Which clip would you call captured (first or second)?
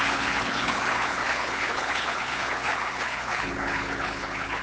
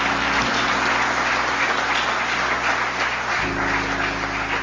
second